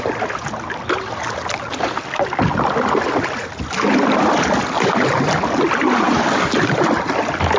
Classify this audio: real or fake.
real